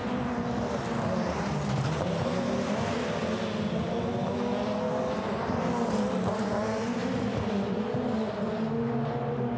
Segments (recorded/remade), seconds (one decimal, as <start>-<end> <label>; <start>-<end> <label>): 0.0-9.6 recorded